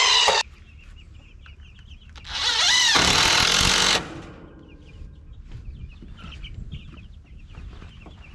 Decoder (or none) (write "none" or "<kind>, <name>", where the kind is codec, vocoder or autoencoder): none